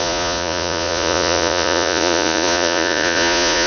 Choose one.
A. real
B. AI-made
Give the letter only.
B